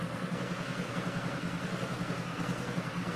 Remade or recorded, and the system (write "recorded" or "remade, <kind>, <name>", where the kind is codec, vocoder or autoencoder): remade, codec, SNAC